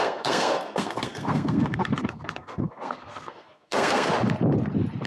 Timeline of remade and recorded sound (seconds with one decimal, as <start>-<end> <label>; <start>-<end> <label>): 0.0-4.1 remade; 4.1-5.1 recorded